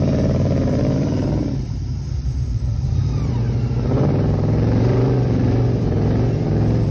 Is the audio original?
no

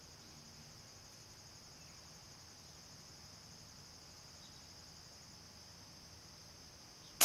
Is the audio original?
yes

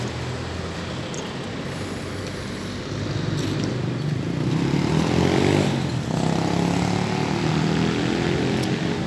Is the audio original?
yes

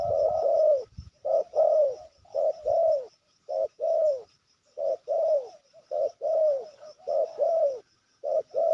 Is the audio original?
no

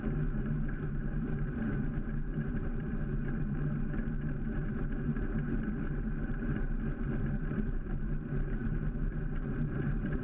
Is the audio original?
no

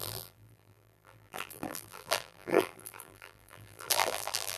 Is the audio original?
no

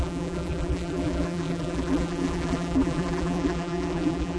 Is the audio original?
no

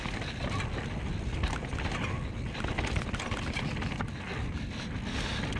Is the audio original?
yes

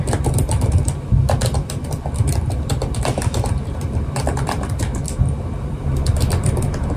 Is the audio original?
no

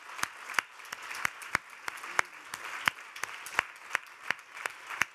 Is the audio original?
yes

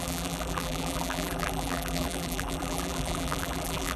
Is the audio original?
no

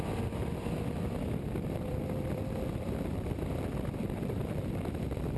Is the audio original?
no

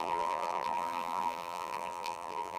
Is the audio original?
no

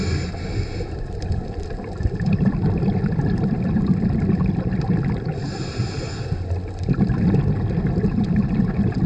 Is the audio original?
yes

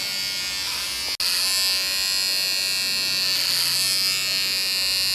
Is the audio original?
yes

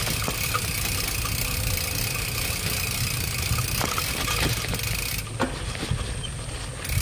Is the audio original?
yes